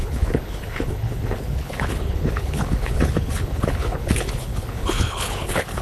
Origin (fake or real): fake